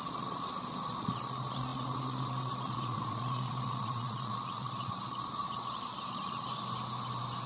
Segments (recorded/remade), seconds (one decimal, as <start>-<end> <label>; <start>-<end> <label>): 0.0-6.5 remade; 6.5-7.5 recorded